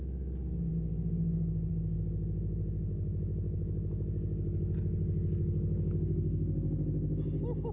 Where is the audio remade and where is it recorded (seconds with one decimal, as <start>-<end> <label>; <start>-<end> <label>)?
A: 0.0-7.7 recorded